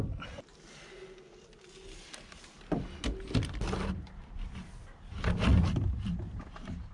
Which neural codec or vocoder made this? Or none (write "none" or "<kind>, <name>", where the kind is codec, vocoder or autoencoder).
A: none